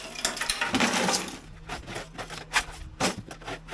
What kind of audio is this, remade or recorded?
recorded